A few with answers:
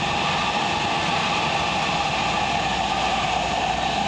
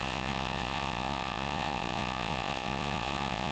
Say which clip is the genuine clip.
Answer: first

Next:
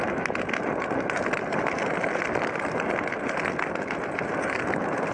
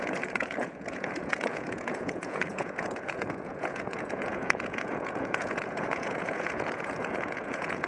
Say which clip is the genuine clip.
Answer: first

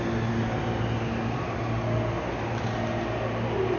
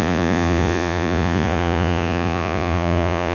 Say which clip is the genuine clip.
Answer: first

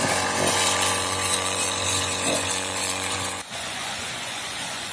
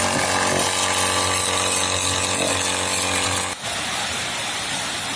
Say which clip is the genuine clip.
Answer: second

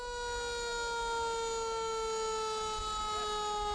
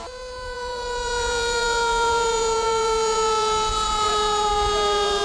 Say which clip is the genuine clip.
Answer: first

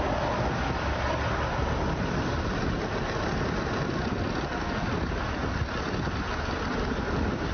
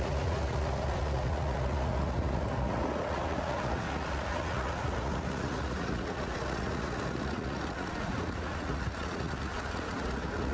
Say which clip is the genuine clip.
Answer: first